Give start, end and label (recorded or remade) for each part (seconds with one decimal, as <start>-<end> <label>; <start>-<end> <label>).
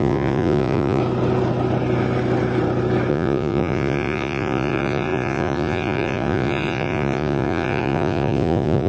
0.0-1.0 remade; 1.0-3.1 recorded; 3.1-8.9 remade